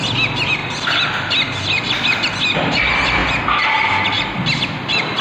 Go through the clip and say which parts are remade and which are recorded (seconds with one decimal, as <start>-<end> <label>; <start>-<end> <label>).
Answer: 0.0-5.2 recorded